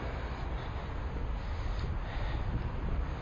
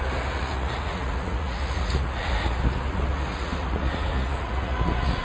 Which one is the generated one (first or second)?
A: second